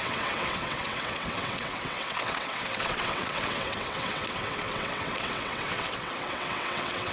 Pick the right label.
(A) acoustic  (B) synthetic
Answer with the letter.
B